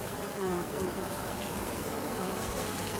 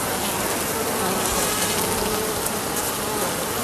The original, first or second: second